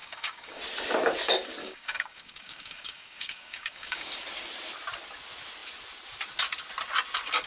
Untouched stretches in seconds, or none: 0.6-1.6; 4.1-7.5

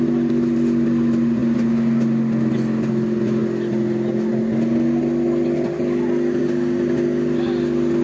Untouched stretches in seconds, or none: 0.0-8.0